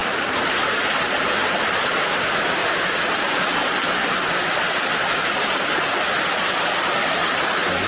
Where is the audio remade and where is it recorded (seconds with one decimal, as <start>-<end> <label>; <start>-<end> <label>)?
0.0-7.9 remade